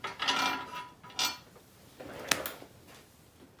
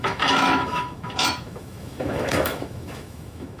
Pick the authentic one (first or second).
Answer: first